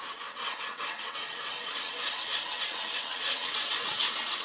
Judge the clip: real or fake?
fake